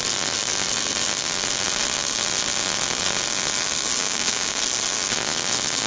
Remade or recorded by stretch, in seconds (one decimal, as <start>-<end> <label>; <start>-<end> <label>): 0.0-4.0 recorded; 4.0-4.6 remade; 4.6-5.9 recorded